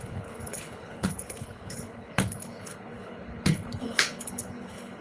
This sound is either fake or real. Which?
fake